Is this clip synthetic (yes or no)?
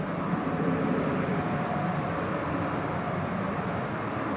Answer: yes